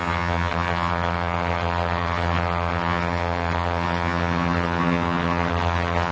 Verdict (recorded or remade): remade